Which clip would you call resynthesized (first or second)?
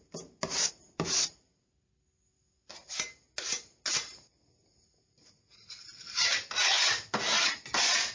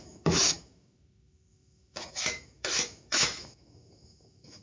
second